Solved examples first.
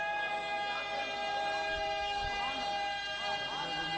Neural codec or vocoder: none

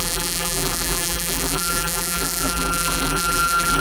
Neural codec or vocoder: vocoder, BigVGAN v2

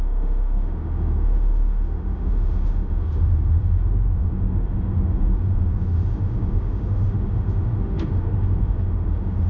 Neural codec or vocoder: autoencoder, DAC-VAE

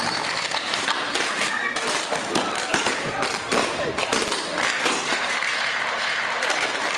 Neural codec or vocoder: vocoder, BigVGAN v2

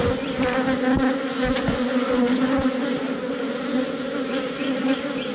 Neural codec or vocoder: none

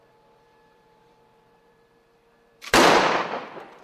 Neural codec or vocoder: vocoder, BigVGAN v2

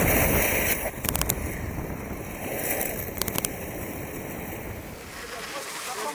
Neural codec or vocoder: vocoder, BigVGAN v2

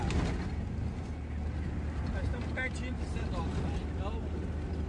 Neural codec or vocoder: none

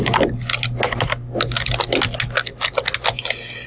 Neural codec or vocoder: none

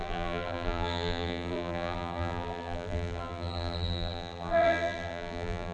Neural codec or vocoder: vocoder, BigVGAN v2